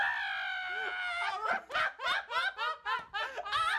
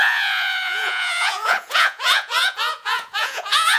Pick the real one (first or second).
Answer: first